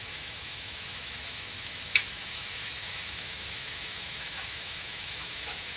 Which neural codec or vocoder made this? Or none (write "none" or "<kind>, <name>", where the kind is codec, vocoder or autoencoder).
autoencoder, DAC-VAE